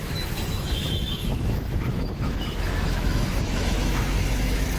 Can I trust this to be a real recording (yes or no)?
no